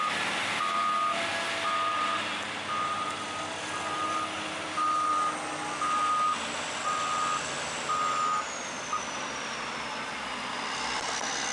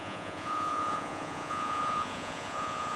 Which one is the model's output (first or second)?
second